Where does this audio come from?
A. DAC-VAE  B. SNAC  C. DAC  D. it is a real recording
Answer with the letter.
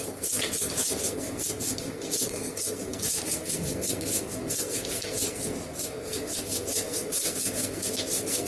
B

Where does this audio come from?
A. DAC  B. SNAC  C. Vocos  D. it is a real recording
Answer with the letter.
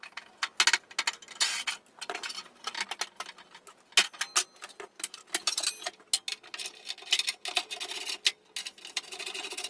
D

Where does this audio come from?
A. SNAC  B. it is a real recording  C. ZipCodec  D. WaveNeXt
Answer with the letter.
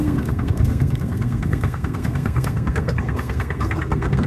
A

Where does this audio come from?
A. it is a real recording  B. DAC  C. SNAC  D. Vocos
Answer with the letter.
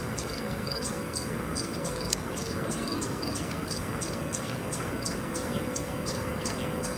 C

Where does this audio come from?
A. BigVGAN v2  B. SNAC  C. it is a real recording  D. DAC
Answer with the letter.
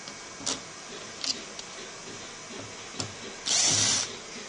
C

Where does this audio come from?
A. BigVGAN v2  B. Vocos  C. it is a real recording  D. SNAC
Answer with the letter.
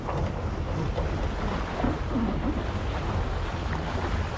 C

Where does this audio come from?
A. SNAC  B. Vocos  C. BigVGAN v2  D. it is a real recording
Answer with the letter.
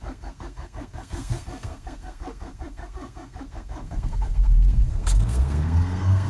A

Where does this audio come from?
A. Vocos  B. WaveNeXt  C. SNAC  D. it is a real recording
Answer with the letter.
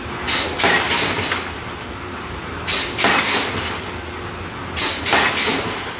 D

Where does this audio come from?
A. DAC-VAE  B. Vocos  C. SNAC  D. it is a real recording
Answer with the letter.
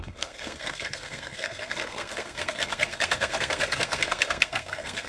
C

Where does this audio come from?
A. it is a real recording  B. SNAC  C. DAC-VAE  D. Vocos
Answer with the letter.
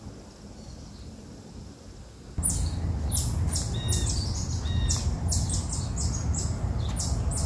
A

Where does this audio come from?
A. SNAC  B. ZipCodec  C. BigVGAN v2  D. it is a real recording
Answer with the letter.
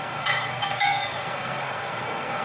A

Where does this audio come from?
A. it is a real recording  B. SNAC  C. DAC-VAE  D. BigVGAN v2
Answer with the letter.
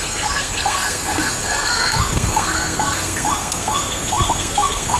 B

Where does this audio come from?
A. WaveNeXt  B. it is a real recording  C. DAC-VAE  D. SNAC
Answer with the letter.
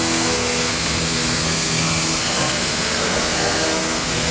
D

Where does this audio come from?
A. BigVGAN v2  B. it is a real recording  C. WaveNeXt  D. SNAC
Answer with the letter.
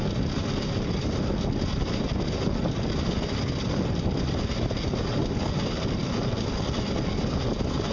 B